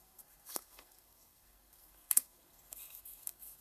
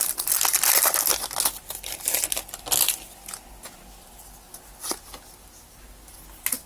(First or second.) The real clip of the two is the second